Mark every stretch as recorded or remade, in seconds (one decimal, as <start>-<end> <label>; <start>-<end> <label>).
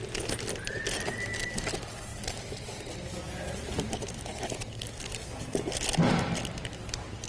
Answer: 0.0-7.3 recorded